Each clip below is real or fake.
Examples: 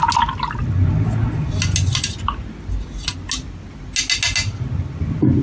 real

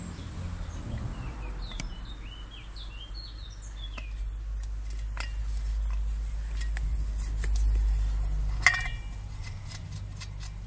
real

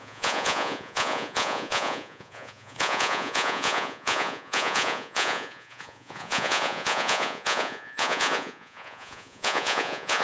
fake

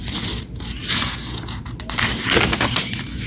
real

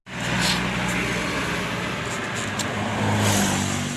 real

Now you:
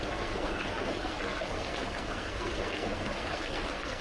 fake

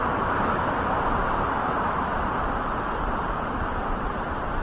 fake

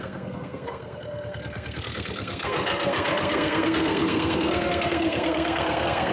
fake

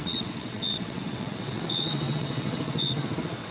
fake